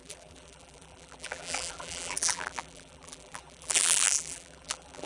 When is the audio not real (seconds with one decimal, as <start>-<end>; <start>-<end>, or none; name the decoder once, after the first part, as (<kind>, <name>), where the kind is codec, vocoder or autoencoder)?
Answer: 0.0-5.1 (vocoder, BigVGAN v2)